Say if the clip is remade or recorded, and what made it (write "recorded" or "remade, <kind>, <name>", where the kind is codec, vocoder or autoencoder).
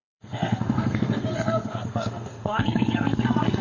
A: remade, codec, SNAC